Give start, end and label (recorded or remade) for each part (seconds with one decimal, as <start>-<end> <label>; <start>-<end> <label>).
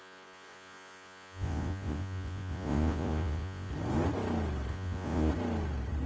0.0-3.7 remade; 3.7-4.7 recorded; 4.7-5.3 remade; 5.3-6.1 recorded